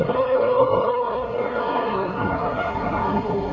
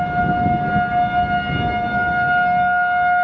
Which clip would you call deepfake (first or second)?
first